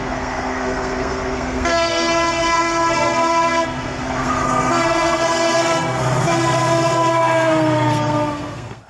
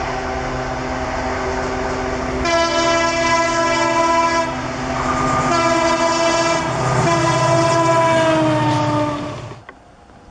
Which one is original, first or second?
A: second